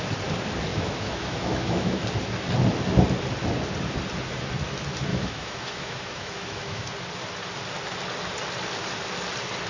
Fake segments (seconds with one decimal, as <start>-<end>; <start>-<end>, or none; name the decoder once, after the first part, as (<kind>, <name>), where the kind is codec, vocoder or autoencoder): 0.7-2.0 (autoencoder, DAC-VAE); 5.1-6.8